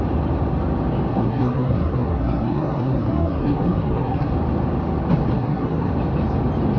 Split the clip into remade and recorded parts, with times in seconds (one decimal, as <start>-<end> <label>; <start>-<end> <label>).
0.0-1.1 recorded; 1.1-4.3 remade; 4.3-5.3 recorded; 5.3-5.9 remade; 5.9-6.8 recorded